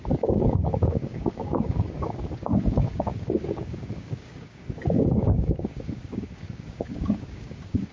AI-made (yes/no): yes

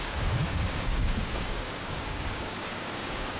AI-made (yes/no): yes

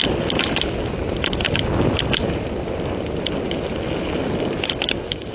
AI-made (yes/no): no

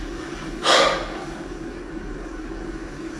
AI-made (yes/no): yes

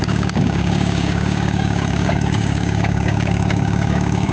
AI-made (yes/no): yes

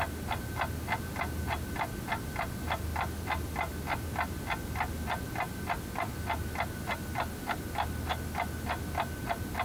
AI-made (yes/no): no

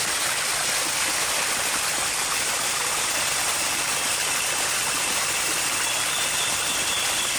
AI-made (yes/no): no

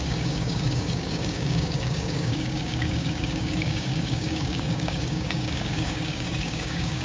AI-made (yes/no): yes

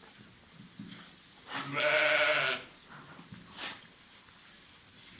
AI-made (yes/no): no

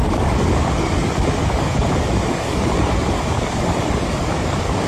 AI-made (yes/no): yes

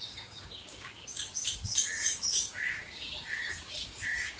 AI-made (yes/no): yes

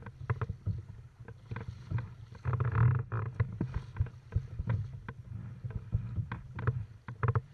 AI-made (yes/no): no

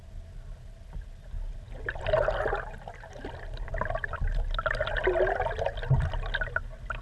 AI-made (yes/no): no